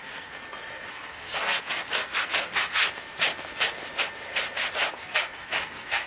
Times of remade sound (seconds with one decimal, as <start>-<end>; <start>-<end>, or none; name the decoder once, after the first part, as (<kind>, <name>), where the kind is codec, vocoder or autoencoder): 0.0-0.4 (codec, SNAC); 0.9-2.8; 4.9-6.1